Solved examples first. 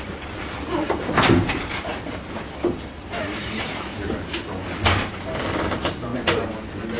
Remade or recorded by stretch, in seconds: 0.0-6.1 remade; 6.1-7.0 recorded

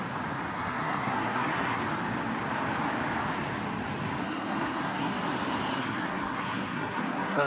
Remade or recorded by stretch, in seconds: 0.0-0.5 recorded; 0.5-1.8 remade; 1.8-4.2 recorded; 4.2-5.1 remade; 5.1-5.7 recorded; 5.7-7.5 remade

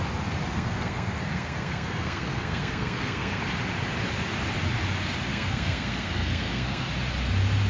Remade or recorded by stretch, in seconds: 0.0-0.5 recorded; 0.5-3.4 remade; 3.4-5.3 recorded; 5.3-6.9 remade; 6.9-7.7 recorded

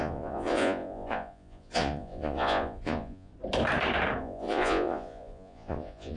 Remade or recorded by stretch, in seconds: 0.0-3.3 remade; 3.3-4.2 recorded; 4.2-6.2 remade

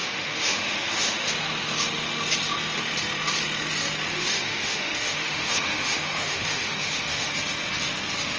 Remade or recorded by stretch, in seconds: 0.0-1.3 remade; 1.3-4.1 recorded; 4.1-7.3 remade; 7.3-8.4 recorded

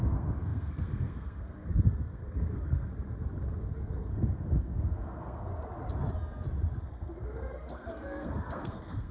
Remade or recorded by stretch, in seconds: 0.0-2.9 remade; 2.9-3.8 recorded; 3.8-5.5 remade; 5.5-6.8 recorded; 6.8-9.1 remade

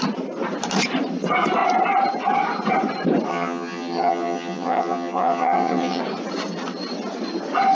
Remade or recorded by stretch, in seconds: 0.0-3.3 recorded; 3.3-6.0 remade; 6.0-7.7 recorded